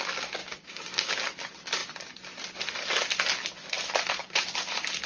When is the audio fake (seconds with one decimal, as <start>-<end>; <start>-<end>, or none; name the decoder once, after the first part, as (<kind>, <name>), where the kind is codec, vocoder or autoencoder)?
0.4-1.2 (codec, DAC)